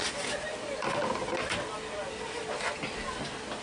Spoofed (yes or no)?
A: no